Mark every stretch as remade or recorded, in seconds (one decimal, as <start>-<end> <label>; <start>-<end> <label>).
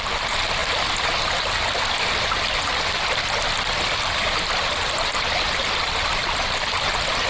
0.0-7.3 recorded